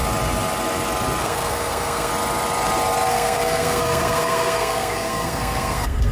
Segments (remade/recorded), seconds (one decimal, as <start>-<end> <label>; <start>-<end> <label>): 0.0-1.2 recorded; 1.2-2.1 remade; 2.1-3.1 recorded; 3.1-6.1 remade